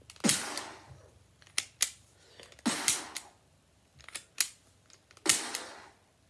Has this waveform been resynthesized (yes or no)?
no